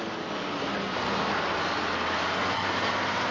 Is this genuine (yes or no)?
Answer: yes